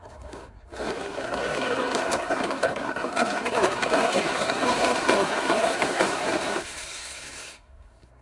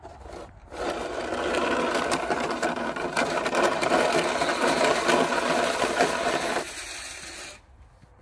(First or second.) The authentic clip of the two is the second